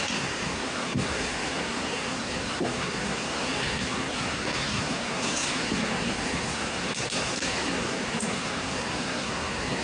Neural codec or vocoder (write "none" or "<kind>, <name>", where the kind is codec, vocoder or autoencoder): codec, SNAC